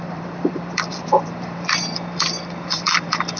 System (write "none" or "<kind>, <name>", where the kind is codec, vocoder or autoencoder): vocoder, BigVGAN v2